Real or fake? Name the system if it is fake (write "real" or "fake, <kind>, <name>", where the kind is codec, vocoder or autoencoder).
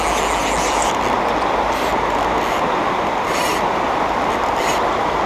real